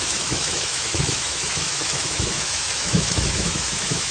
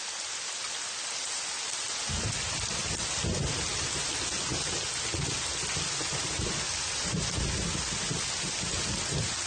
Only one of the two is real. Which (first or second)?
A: second